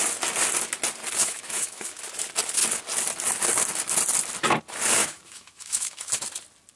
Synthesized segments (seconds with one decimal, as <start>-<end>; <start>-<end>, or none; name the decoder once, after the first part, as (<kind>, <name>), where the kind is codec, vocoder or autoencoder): 1.2-2.0 (autoencoder, DAC-VAE); 5.0-6.1